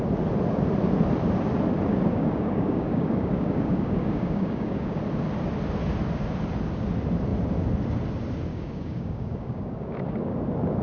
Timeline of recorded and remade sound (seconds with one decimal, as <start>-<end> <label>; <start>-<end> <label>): 0.0-1.9 recorded; 1.9-5.0 remade; 5.0-8.5 recorded; 8.5-10.4 remade; 10.4-10.8 recorded

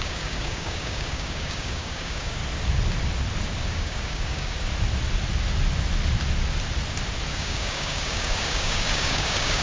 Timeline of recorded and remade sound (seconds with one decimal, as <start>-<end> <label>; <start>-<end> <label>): 0.0-2.4 remade; 2.4-3.7 recorded; 3.7-4.7 remade; 4.7-7.3 recorded; 7.3-9.6 remade

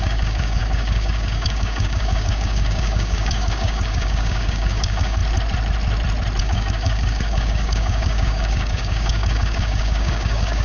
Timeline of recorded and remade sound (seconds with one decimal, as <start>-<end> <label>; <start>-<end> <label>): 0.0-5.2 remade; 5.2-6.4 recorded; 6.4-10.6 remade